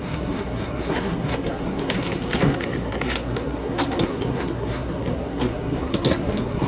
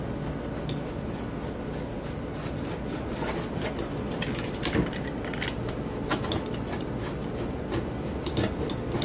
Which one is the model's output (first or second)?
first